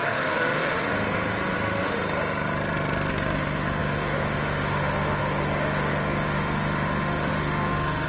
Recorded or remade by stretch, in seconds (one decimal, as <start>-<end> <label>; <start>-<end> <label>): 0.0-2.0 remade; 2.0-3.1 recorded; 3.1-8.1 remade